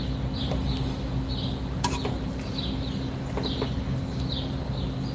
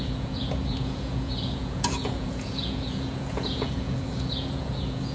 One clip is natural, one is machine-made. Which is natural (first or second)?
first